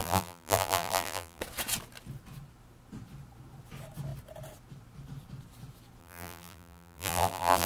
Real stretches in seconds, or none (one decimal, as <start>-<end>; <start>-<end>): 1.4-6.0